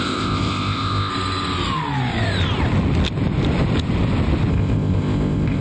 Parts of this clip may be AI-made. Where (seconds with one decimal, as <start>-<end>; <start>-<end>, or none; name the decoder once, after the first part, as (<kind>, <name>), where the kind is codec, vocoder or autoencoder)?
0.0-1.1 (codec, ZipCodec); 4.5-5.6